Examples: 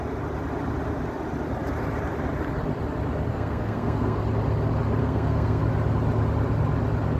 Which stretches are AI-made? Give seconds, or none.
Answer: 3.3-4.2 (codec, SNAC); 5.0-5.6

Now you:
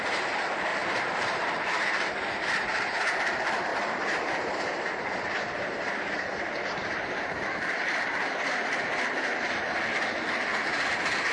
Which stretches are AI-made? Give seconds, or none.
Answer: 0.7-2.1 (vocoder, BigVGAN v2); 3.7-5.3

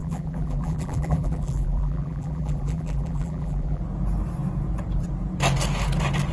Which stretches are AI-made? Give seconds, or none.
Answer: 0.0-3.8 (vocoder, BigVGAN v2)